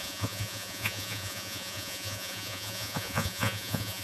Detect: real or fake fake